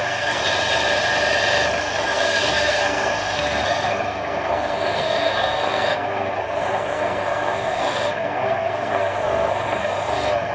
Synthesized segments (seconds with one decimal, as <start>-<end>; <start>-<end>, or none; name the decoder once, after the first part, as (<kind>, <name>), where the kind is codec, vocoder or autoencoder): 0.0-0.4 (codec, SNAC); 1.8-10.5